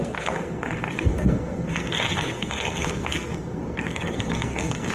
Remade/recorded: remade